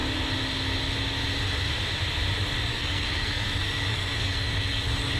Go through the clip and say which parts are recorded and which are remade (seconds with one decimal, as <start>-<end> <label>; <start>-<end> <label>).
0.0-2.7 recorded; 2.7-4.8 remade; 4.8-5.2 recorded